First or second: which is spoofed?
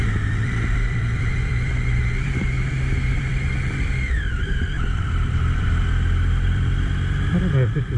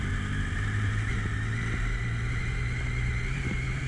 first